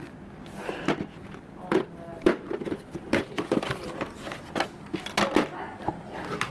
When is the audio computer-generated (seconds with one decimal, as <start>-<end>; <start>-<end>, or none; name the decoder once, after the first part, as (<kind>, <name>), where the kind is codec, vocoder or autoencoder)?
none